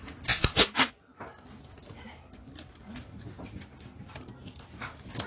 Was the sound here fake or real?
real